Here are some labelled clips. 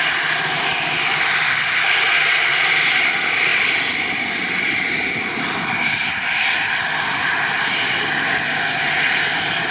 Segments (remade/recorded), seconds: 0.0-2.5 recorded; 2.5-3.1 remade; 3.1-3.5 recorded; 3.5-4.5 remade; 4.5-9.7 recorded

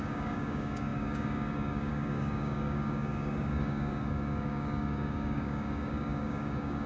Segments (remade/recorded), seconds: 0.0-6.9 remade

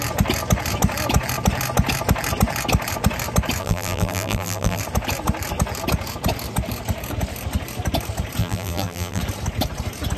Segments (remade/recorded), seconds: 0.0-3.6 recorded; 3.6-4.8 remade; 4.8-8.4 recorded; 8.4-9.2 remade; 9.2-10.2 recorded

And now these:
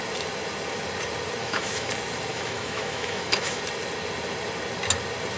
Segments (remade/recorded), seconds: 0.0-1.4 recorded; 1.4-1.9 remade; 1.9-2.3 recorded; 2.3-3.6 remade; 3.6-5.4 recorded

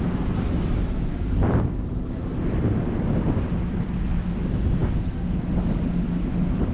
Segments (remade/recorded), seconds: 0.0-6.7 recorded

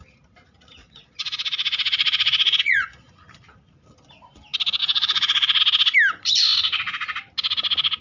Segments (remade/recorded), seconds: 0.0-0.8 recorded; 0.8-3.1 remade; 3.1-4.8 recorded; 4.8-5.6 remade; 5.6-8.0 recorded